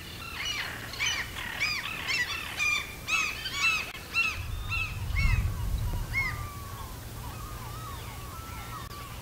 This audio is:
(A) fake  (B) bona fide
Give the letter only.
B